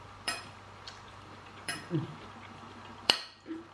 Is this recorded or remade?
remade